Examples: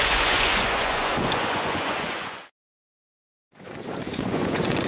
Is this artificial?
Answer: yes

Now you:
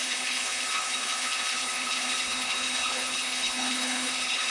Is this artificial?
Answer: yes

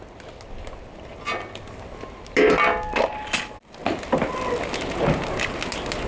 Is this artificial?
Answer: no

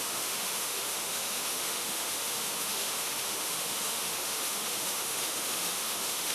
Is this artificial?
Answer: yes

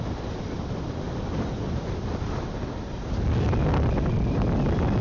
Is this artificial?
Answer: no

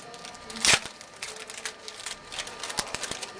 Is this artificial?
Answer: no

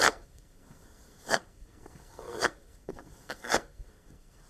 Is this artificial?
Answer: yes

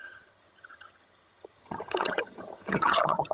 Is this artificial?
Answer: yes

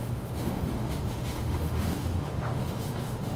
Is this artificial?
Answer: yes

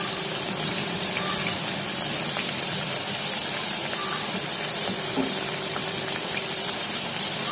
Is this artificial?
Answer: yes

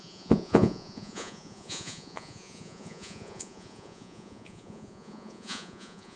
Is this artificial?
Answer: yes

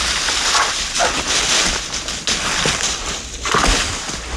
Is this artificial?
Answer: no